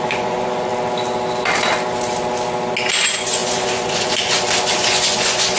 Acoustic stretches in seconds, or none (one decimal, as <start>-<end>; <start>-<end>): 0.7-2.9